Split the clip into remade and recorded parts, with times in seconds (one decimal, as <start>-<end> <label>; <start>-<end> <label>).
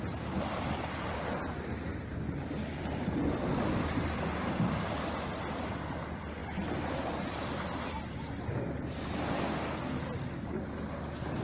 0.0-11.4 recorded